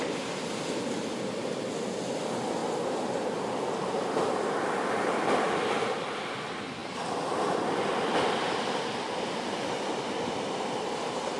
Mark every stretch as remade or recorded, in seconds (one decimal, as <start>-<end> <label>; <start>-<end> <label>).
0.0-11.4 recorded